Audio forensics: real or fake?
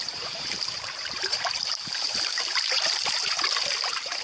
fake